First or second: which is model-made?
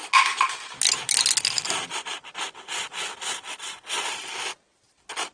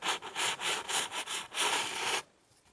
second